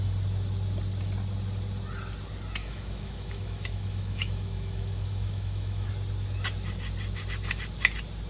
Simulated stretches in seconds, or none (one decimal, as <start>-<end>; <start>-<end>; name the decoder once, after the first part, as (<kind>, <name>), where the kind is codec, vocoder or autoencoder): 2.6-5.9 (autoencoder, DAC-VAE)